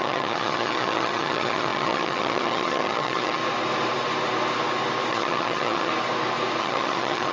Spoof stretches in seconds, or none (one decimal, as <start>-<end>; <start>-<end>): 0.0-3.4; 5.1-5.9; 6.6-7.3